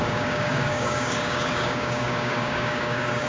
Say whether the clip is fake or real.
fake